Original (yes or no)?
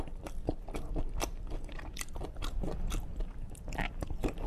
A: no